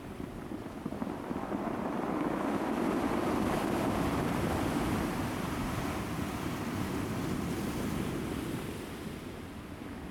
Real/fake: real